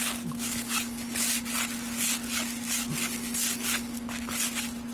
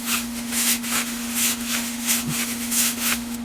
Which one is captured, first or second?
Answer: first